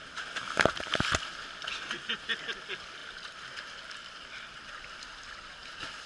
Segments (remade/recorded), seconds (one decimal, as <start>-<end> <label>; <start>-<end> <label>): 0.0-6.1 recorded